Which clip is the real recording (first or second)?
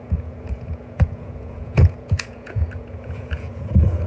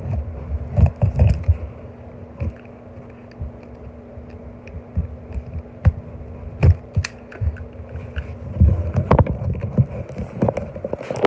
second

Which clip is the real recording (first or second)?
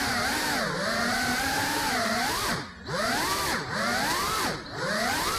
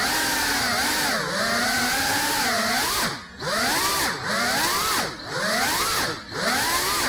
second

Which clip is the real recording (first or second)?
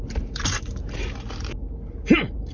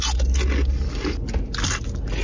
second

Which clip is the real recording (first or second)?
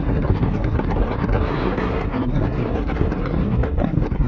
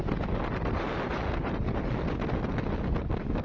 second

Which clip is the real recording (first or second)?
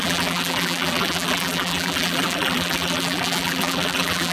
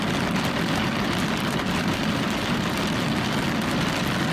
second